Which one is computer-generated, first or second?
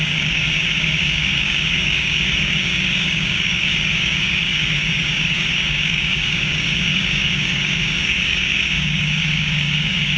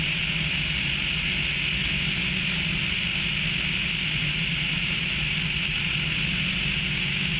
first